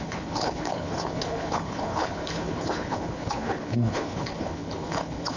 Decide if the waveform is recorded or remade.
remade